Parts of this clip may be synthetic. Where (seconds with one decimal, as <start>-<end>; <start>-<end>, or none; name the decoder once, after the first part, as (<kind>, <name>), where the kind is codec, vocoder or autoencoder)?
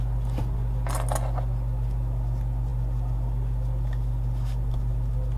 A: none